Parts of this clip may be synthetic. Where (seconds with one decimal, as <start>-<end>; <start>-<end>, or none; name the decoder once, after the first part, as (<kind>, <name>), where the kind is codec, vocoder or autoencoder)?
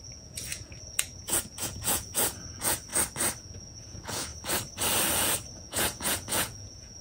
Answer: 0.0-2.9 (vocoder, Vocos); 3.4-4.3; 5.5-7.0